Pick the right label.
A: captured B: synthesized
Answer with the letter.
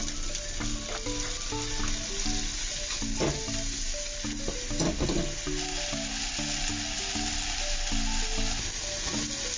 A